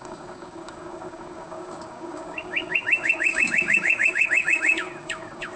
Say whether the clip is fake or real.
fake